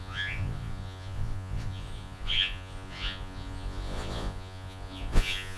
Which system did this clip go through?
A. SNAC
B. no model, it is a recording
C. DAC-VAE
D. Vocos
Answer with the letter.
D